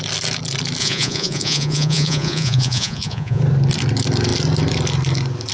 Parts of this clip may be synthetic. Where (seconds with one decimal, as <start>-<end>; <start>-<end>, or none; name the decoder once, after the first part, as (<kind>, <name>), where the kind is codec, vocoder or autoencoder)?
0.8-3.4 (vocoder, Vocos)